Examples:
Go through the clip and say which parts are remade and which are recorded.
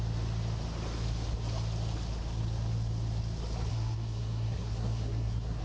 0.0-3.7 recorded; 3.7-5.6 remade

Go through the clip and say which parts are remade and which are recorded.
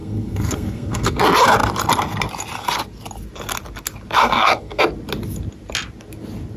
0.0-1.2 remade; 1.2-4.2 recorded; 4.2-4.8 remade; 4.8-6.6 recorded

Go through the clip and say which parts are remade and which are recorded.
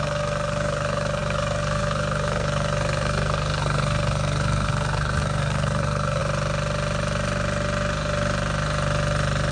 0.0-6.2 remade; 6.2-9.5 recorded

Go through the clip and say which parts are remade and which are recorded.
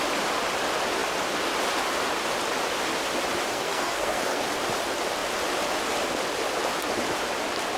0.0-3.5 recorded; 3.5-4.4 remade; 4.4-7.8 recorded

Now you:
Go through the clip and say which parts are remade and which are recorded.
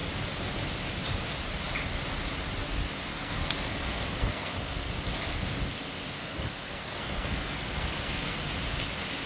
0.0-3.1 recorded; 3.1-4.9 remade; 4.9-6.2 recorded; 6.2-8.5 remade; 8.5-9.3 recorded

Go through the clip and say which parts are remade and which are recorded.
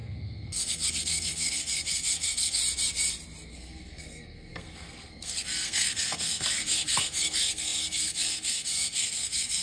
0.0-2.6 remade; 2.6-3.5 recorded; 3.5-9.6 remade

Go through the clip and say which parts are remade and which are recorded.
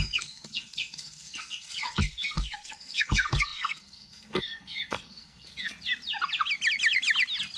0.0-5.7 remade; 5.7-7.6 recorded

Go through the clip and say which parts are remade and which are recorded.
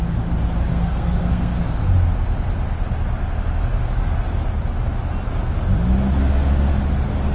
0.0-0.7 recorded; 0.7-1.6 remade; 1.6-7.3 recorded